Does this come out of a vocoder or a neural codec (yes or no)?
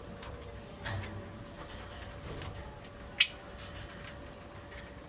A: no